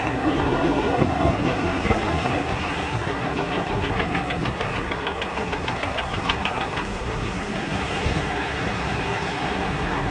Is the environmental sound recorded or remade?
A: remade